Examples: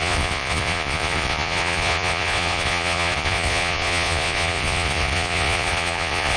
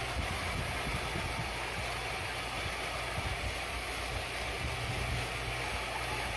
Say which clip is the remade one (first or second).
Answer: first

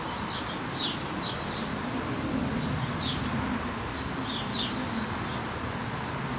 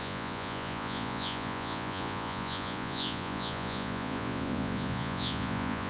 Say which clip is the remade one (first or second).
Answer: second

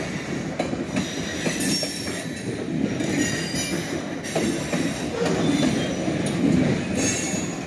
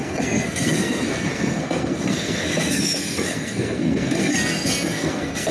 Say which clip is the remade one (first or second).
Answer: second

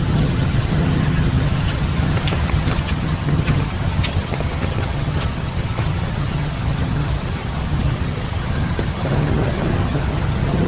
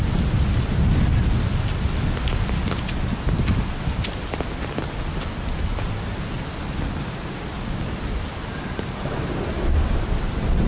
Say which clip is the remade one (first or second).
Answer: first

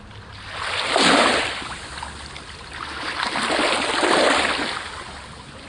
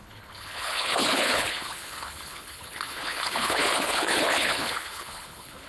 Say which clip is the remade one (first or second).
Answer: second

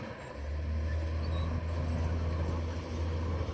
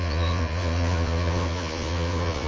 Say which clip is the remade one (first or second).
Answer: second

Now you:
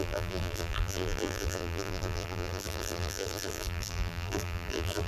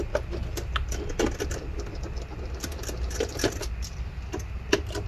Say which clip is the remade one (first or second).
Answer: first